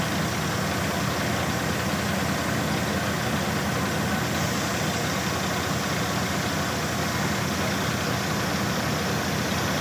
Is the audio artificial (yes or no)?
no